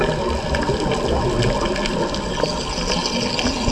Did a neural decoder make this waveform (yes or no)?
no